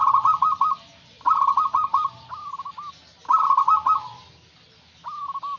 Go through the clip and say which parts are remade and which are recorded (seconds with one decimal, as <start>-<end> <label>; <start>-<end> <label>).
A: 0.0-5.6 recorded